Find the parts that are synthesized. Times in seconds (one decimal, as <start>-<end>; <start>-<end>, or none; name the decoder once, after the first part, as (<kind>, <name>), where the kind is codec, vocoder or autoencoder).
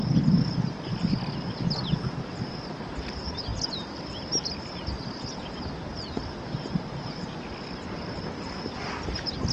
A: none